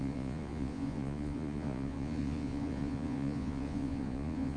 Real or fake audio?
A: fake